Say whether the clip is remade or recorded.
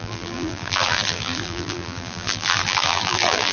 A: remade